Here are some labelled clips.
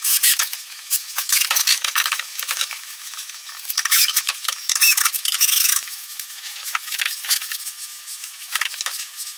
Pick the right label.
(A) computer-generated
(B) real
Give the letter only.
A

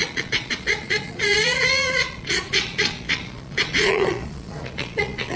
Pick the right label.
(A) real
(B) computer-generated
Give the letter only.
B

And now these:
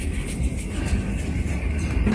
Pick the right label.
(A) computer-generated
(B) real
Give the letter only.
B